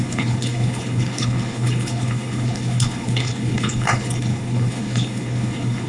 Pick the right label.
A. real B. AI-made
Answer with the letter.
B